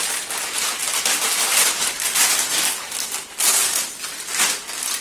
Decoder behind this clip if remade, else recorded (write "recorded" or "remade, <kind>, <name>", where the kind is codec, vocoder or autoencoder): recorded